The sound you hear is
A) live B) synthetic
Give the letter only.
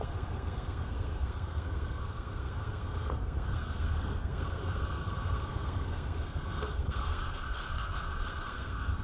B